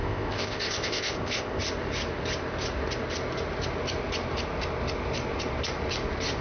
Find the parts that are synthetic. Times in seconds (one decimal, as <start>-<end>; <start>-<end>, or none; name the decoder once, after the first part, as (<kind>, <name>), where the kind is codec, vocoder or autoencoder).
0.0-1.6 (codec, ZipCodec)